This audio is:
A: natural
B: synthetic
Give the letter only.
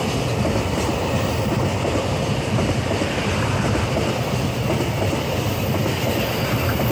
A